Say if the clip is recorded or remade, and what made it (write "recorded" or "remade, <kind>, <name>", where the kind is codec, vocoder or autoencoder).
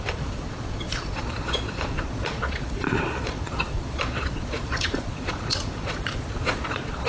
remade, vocoder, Vocos